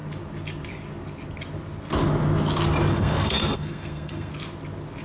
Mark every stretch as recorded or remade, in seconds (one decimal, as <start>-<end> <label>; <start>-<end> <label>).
0.0-2.9 recorded; 2.9-4.3 remade; 4.3-5.0 recorded